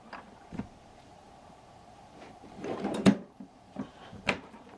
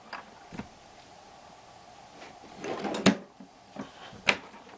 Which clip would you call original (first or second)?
second